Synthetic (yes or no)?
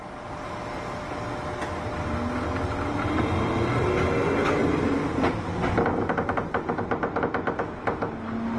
no